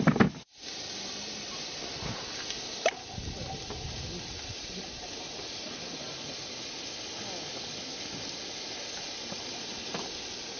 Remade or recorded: recorded